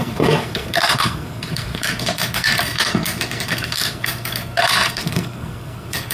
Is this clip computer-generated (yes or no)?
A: yes